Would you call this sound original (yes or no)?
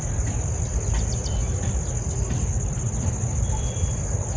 yes